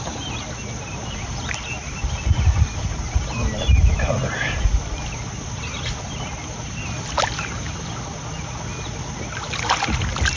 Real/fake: real